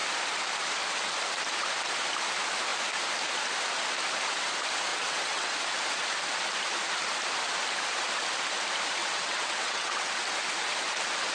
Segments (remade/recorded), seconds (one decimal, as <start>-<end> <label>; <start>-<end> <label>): 0.0-4.9 recorded; 4.9-5.5 remade; 5.5-9.0 recorded; 9.0-10.2 remade; 10.2-11.3 recorded